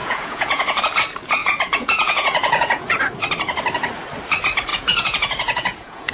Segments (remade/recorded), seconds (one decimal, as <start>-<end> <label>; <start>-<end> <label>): 0.0-0.8 remade; 0.8-1.4 recorded; 1.4-3.0 remade; 3.0-4.7 recorded; 4.7-6.1 remade

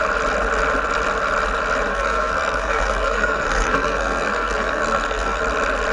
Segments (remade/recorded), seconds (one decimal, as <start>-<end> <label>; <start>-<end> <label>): 0.0-1.9 recorded; 1.9-5.4 remade; 5.4-5.9 recorded

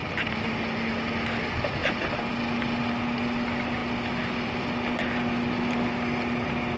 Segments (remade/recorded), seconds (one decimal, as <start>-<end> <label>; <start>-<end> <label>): 0.0-6.8 recorded

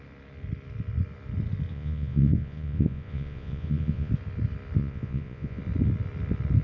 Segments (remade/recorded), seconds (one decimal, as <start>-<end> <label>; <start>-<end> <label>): 0.0-1.7 recorded; 1.7-4.1 remade; 4.1-4.8 recorded; 4.8-5.6 remade; 5.6-6.6 recorded